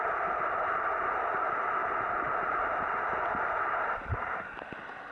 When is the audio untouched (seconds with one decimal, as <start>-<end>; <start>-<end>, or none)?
0.0-5.1